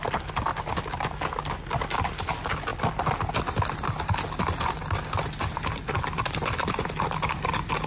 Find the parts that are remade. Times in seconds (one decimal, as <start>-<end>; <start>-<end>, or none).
none